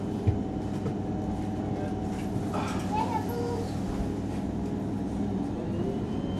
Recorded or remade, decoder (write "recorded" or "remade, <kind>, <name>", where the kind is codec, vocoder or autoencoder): recorded